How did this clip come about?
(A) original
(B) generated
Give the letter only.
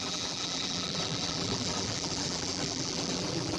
B